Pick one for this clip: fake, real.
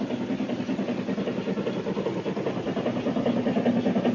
real